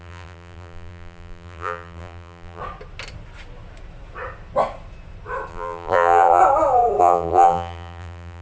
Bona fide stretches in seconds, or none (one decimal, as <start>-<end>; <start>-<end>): 2.6-5.5; 6.4-7.0